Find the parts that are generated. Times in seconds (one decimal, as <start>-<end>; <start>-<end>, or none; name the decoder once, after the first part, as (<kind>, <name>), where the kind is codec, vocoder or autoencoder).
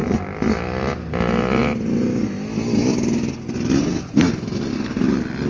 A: 0.0-0.5 (vocoder, BigVGAN v2)